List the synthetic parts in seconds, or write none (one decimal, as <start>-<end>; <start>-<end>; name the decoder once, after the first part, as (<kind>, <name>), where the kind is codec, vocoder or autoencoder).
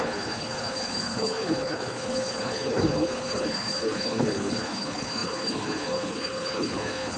0.0-7.2 (codec, HILCodec)